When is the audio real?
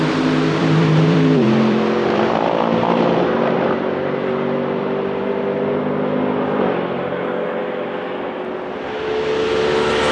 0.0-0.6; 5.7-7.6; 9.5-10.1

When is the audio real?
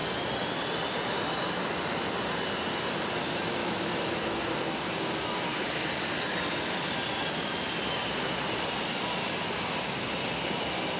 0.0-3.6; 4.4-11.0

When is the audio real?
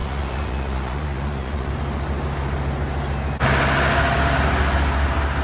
1.7-5.4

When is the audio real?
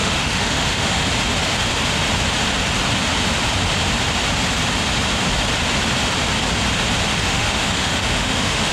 1.1-7.2